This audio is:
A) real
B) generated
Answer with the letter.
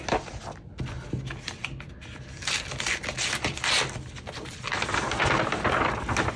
A